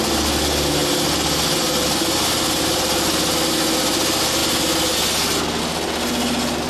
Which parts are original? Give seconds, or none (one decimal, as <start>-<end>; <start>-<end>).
0.0-6.7

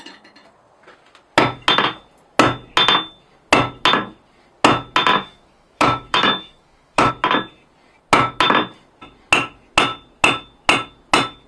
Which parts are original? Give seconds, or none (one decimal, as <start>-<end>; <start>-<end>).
0.0-5.1; 7.1-11.5

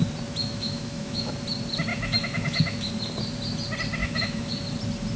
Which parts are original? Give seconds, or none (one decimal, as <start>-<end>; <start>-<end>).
0.0-0.4; 1.3-1.9; 2.9-4.0; 4.5-5.2

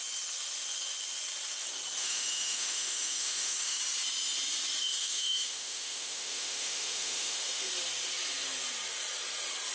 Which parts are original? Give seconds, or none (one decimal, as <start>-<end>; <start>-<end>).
0.0-2.0; 3.8-4.8; 7.7-9.7